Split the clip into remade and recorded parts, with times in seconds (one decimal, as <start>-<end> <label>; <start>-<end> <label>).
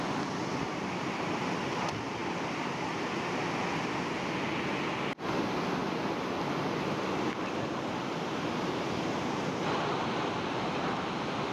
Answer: 0.0-11.5 recorded